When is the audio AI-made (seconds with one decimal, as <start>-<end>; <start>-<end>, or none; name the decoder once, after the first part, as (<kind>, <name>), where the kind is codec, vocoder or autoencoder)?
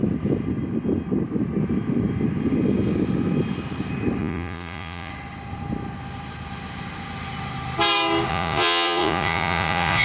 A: 4.2-5.1 (vocoder, Vocos); 8.3-10.0